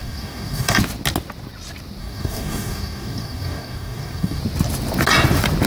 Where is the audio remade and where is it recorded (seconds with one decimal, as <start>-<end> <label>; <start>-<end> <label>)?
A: 0.0-0.8 remade; 0.8-2.0 recorded; 2.0-4.4 remade; 4.4-5.7 recorded